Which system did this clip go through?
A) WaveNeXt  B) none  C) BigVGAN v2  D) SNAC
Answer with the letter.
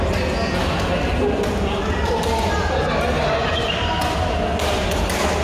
B